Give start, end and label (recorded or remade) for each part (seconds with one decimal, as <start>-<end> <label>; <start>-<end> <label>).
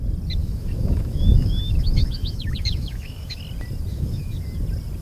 0.0-0.4 recorded; 0.4-3.4 remade; 3.4-3.9 recorded; 3.9-4.4 remade; 4.4-5.0 recorded